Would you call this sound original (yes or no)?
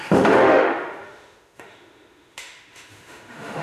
no